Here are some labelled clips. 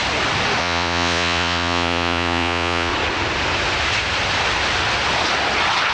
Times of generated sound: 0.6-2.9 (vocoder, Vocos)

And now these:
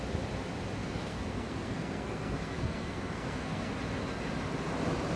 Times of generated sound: 0.8-3.7 (codec, SNAC)

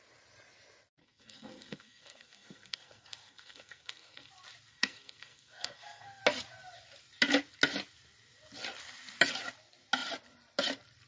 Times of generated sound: 1.0-4.3 (codec, SNAC); 4.7-6.2

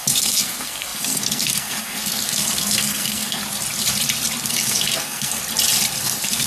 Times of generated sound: 0.0-3.4 (codec, SNAC); 4.4-5.4; 6.0-6.5

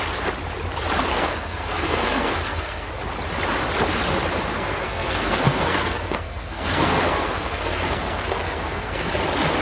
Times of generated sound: 1.1-2.9 (codec, SNAC); 4.5-9.1